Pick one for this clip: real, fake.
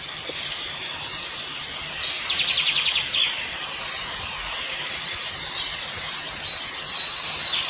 real